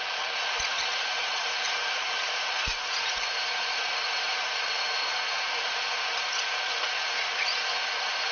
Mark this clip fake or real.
fake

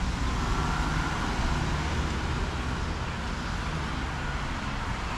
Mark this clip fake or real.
real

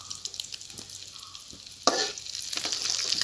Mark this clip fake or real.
real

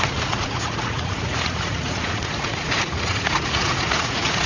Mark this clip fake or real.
fake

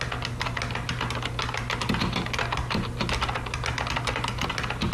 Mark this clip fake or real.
real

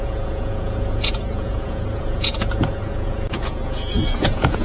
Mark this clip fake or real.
fake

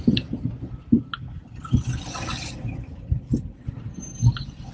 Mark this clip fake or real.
real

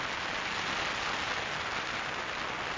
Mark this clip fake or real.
real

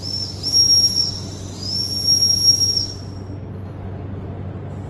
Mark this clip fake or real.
real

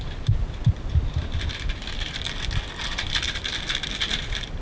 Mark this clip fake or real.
real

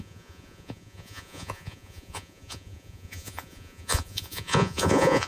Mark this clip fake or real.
fake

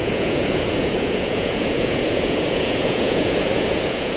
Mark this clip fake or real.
fake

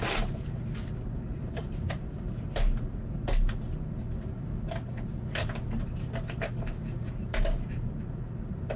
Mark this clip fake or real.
real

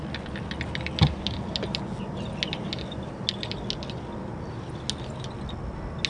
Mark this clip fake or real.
real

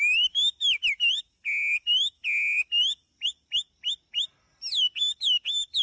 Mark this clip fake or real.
real